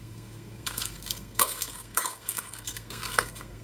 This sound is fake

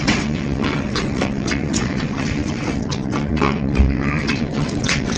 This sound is fake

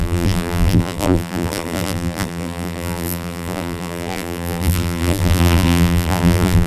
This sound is fake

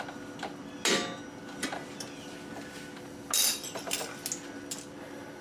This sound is real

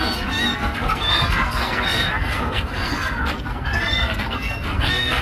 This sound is fake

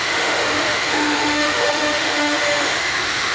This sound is fake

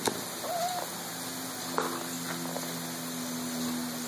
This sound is real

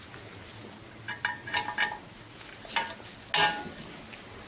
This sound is real